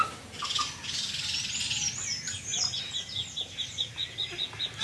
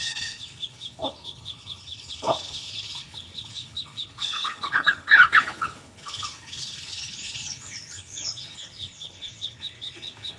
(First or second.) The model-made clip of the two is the second